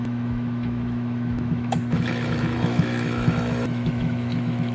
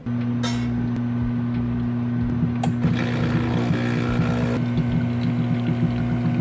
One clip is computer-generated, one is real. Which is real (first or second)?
second